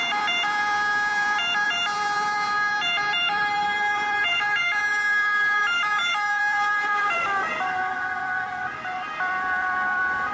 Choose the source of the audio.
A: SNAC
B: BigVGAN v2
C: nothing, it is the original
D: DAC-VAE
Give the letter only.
B